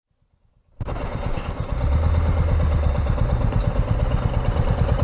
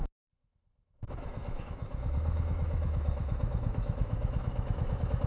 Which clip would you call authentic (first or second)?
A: first